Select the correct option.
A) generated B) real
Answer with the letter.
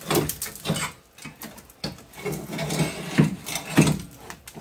B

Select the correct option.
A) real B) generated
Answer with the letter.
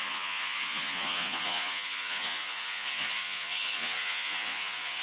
B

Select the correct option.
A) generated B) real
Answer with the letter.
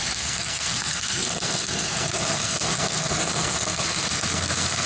A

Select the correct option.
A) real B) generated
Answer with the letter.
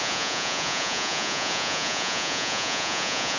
B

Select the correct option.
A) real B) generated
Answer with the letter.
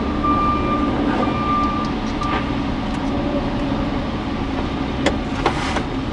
A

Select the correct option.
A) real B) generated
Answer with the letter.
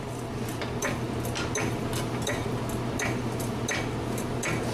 A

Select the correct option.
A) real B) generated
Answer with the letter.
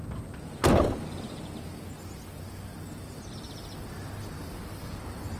A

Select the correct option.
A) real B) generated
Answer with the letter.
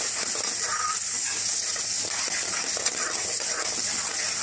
A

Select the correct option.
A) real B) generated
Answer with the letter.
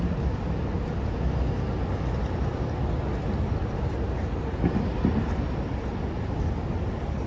A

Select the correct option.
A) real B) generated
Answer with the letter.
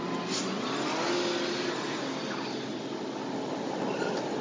A